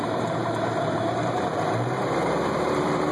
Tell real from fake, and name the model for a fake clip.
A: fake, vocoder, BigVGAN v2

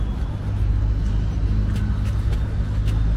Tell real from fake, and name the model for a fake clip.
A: real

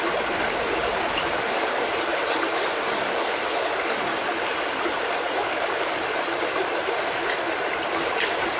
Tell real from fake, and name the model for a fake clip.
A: fake, vocoder, BigVGAN v2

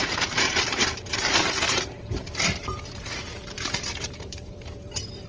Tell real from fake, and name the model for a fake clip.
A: fake, vocoder, BigVGAN v2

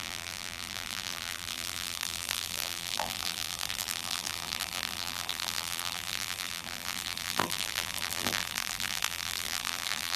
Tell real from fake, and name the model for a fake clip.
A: fake, vocoder, BigVGAN v2